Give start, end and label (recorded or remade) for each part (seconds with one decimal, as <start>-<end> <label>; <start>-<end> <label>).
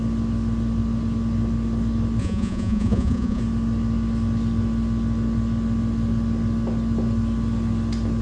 0.0-2.2 recorded; 2.2-3.4 remade; 3.4-8.2 recorded